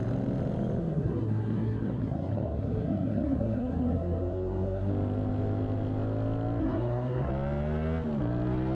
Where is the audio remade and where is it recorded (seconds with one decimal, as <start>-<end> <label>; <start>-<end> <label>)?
0.0-0.8 recorded; 0.8-4.9 remade; 4.9-6.6 recorded; 6.6-7.3 remade; 7.3-8.7 recorded